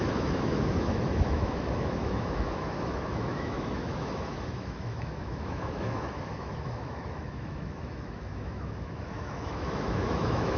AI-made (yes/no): yes